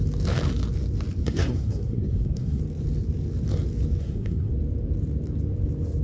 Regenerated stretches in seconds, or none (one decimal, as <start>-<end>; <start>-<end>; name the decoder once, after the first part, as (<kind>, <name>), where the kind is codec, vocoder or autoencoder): 1.2-2.6 (codec, SNAC); 4.0-4.5